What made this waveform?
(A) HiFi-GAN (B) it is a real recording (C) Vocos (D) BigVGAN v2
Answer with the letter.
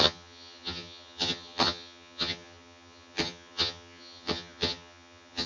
A